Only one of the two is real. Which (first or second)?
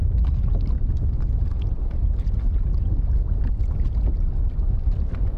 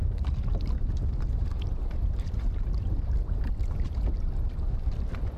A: first